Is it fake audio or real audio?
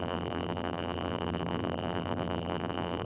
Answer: fake